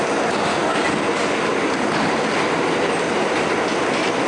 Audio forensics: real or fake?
real